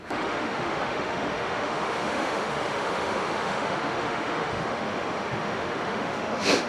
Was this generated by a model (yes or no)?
yes